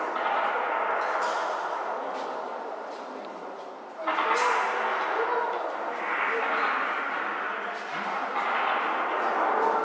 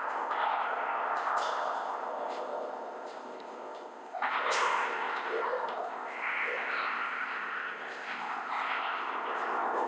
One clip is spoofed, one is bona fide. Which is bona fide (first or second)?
first